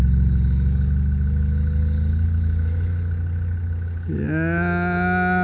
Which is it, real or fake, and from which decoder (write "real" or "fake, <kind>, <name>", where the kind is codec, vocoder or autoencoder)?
real